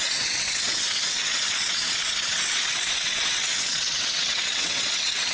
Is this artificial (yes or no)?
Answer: yes